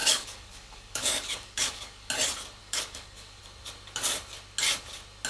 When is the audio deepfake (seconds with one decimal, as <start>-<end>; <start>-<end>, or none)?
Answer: 0.0-2.1; 2.6-3.4